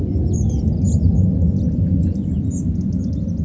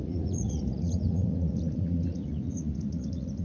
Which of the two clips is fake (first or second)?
second